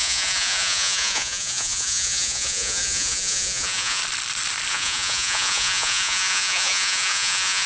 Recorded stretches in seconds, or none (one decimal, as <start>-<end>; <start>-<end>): 4.0-4.7